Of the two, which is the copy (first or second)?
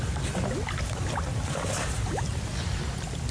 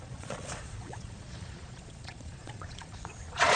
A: second